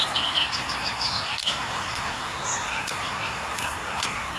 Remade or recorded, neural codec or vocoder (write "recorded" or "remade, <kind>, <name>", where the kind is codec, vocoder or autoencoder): remade, codec, SNAC